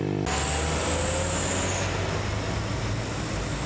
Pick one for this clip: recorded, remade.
recorded